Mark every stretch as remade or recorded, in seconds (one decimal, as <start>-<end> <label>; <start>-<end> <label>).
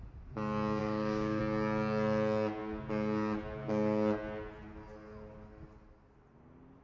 0.0-0.8 recorded; 0.8-1.4 remade; 1.4-6.8 recorded